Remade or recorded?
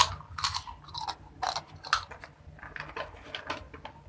recorded